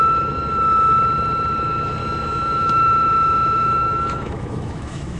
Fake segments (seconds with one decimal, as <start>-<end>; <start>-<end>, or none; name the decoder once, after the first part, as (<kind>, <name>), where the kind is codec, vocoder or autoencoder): 2.0-5.2 (autoencoder, DAC-VAE)